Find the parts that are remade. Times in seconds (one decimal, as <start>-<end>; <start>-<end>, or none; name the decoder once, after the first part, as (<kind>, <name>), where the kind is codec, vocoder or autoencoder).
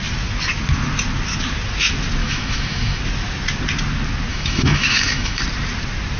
2.2-3.0 (autoencoder, DAC-VAE); 4.3-5.4